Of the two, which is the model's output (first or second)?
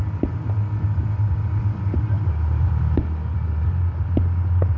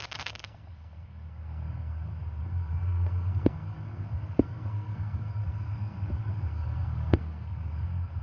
second